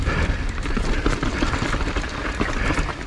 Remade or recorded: remade